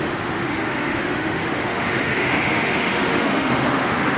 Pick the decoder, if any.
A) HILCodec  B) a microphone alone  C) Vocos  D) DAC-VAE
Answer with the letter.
D